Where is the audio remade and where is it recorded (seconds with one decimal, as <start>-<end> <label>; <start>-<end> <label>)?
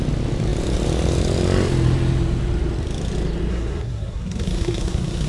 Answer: 0.0-3.5 recorded; 3.5-5.3 remade